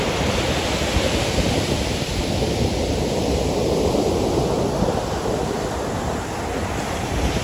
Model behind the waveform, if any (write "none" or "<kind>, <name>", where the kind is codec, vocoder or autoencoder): none